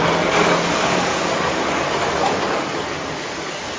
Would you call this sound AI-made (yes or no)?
yes